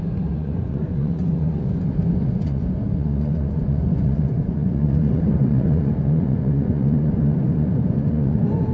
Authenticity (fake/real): fake